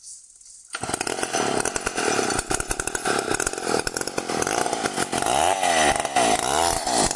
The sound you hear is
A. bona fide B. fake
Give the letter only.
A